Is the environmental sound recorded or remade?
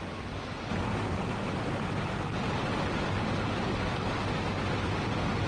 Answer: recorded